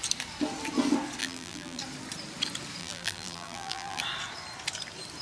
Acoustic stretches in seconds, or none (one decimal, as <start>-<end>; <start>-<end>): 0.0-1.2; 1.8-2.8; 4.0-5.2